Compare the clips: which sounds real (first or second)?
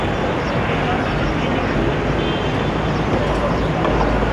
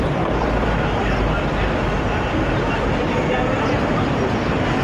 first